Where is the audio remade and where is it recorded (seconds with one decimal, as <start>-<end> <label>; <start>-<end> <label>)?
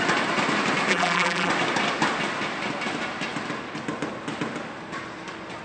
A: 0.0-0.9 recorded; 0.9-1.5 remade; 1.5-5.6 recorded